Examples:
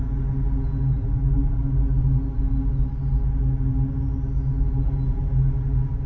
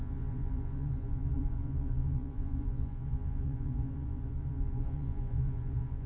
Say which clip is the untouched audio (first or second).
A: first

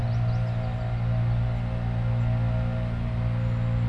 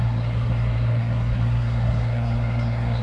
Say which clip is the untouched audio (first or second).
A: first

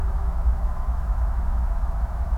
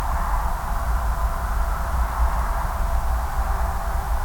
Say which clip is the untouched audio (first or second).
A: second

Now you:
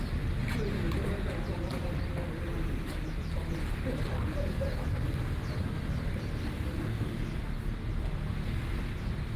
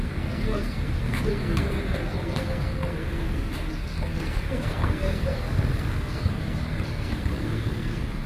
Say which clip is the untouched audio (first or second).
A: first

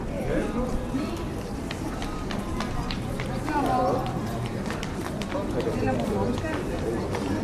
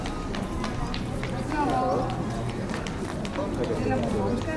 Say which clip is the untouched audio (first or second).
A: second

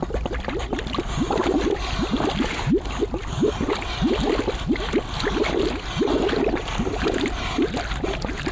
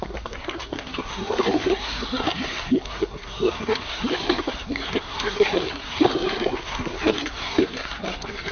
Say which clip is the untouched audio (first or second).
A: first